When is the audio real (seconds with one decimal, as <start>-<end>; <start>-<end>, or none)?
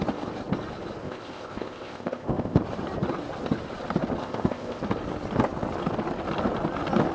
0.0-1.0; 2.6-4.2; 4.8-7.1